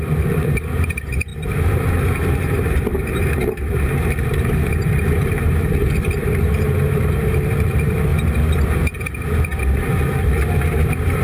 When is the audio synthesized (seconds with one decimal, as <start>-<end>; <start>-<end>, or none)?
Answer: 0.0-8.1; 9.6-11.2